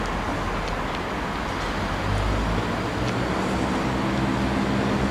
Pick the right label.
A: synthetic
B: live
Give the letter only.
B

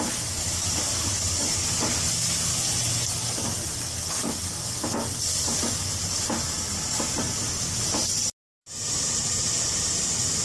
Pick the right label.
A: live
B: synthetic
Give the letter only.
A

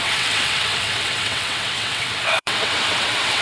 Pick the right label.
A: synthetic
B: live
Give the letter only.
A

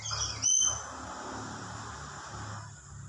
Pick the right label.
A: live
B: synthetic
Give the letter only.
A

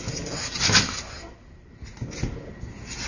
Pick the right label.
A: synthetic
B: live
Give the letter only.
B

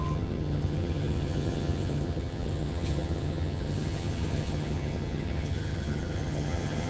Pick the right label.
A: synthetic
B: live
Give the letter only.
A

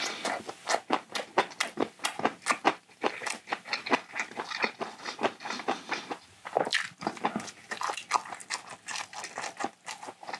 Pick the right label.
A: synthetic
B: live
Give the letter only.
B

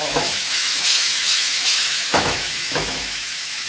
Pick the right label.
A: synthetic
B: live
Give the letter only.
A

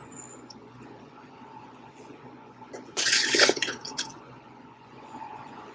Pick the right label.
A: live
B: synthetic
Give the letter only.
B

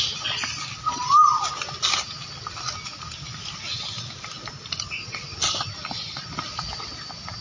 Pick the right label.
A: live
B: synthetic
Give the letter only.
A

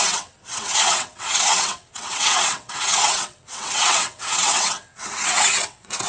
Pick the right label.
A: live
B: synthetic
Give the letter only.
B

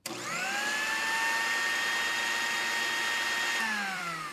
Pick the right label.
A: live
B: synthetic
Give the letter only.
B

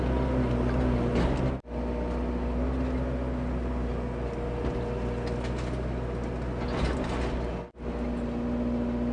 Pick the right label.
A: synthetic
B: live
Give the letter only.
B